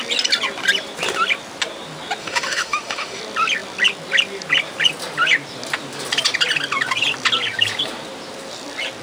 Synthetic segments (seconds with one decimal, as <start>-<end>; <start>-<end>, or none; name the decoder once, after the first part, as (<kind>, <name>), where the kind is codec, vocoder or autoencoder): 2.2-3.2 (autoencoder, DAC-VAE)